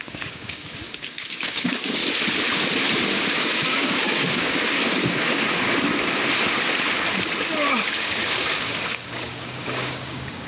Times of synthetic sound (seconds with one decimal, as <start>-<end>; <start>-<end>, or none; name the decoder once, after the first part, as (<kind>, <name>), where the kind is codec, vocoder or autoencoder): 0.0-2.0 (codec, DAC); 3.1-5.9; 7.7-10.5